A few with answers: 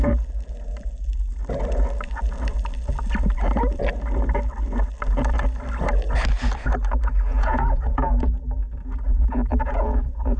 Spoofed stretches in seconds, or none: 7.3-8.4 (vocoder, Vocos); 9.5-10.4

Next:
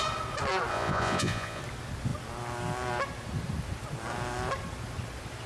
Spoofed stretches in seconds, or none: 0.7-1.6 (vocoder, Vocos)

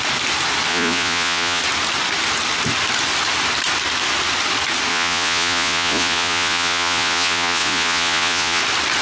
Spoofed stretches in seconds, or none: 0.7-1.6 (vocoder, Vocos); 4.9-8.6

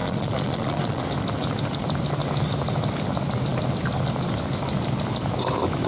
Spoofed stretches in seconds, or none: 0.0-1.0 (vocoder, Vocos)

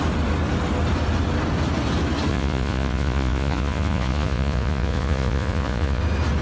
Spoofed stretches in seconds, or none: 2.3-6.0 (vocoder, Vocos)

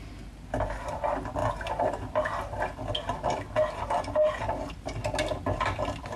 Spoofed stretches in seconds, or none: none

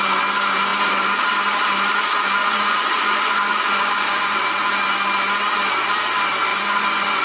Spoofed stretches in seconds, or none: 2.4-4.4 (vocoder, Vocos); 6.5-7.2

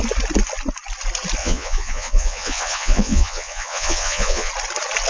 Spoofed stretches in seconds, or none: 1.4-4.5 (vocoder, Vocos)